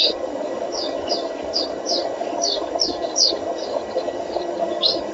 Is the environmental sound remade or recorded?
remade